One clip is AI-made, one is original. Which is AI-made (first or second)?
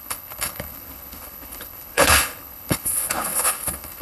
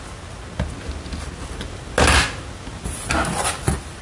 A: first